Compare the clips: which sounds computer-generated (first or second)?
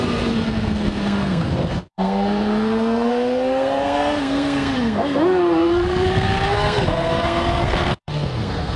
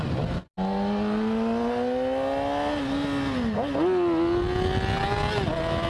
first